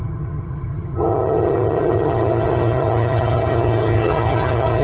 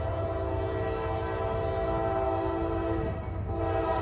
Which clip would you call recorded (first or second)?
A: second